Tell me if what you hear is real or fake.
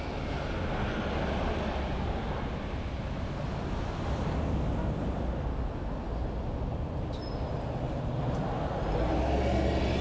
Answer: real